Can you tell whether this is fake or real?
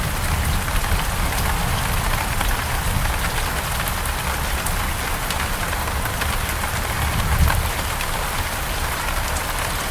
real